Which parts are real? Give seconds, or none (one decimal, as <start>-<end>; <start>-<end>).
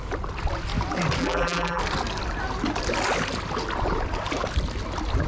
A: 0.0-1.2; 1.8-5.3